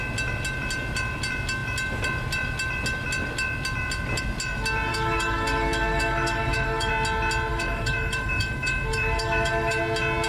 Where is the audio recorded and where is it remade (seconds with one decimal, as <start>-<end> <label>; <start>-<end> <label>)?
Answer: 0.0-4.9 recorded; 4.9-6.9 remade; 6.9-7.5 recorded; 7.5-9.8 remade; 9.8-10.3 recorded